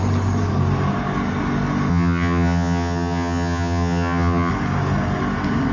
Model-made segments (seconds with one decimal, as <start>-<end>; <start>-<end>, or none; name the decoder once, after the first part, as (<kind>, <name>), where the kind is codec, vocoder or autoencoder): 1.9-4.5 (vocoder, HiFi-GAN)